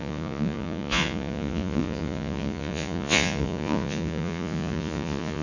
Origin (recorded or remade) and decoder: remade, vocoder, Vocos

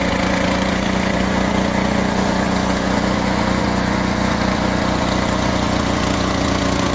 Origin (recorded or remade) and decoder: remade, vocoder, Vocos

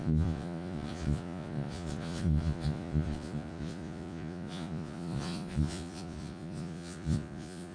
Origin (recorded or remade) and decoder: remade, vocoder, Vocos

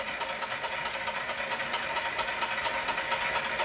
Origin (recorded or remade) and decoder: recorded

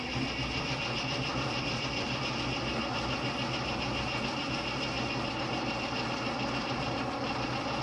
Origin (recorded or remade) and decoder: recorded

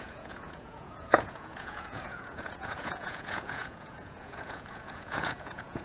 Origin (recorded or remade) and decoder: remade, vocoder, Vocos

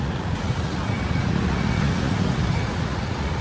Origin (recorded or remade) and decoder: remade, vocoder, Vocos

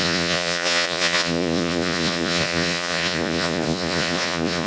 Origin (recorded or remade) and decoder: remade, vocoder, Vocos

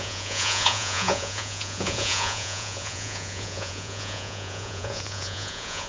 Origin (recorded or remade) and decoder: remade, vocoder, Vocos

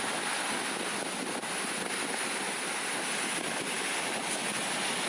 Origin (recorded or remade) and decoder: recorded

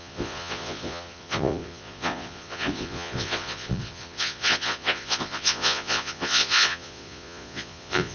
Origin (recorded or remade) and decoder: remade, vocoder, Vocos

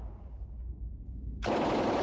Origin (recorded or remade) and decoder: recorded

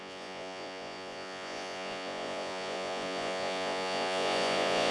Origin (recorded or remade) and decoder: remade, vocoder, Vocos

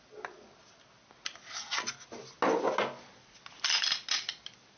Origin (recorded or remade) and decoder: recorded